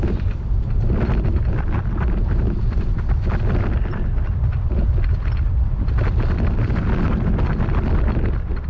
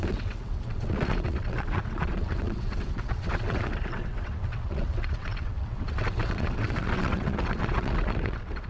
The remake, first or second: second